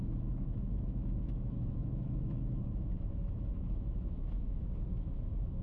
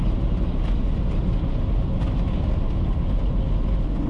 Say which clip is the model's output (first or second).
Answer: first